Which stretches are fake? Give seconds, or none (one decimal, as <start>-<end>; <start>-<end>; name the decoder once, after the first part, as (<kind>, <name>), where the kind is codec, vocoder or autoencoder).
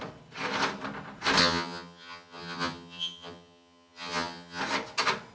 1.4-4.6 (vocoder, HiFi-GAN)